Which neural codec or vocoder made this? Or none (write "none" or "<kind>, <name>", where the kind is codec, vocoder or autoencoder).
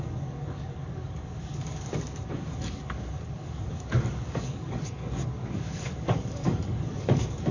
codec, DAC